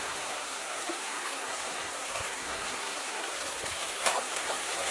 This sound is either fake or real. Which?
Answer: fake